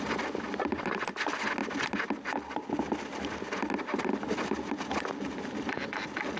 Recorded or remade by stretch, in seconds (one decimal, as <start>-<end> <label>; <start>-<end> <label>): 0.0-6.4 recorded